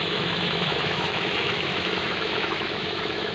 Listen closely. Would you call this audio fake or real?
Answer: fake